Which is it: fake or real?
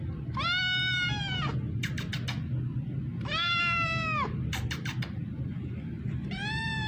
real